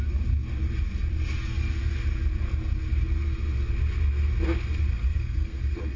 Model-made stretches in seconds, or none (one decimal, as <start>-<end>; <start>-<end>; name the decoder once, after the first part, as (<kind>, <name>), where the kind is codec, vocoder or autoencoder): 4.9-5.6 (codec, SNAC)